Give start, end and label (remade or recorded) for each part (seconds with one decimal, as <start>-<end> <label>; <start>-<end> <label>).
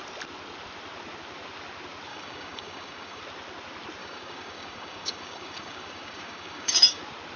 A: 0.0-2.1 recorded; 2.1-3.2 remade; 3.2-4.0 recorded; 4.0-7.0 remade; 7.0-7.4 recorded